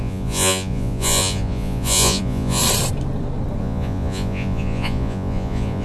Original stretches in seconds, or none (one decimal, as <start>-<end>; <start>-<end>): 2.6-3.6